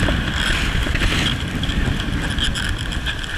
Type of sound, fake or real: real